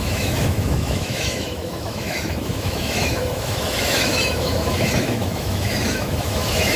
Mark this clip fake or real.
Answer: fake